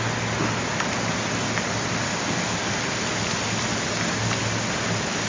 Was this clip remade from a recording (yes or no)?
no